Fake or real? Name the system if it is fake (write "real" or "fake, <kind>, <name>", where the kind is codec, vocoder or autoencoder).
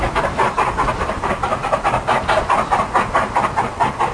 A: real